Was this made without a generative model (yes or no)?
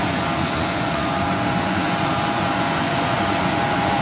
no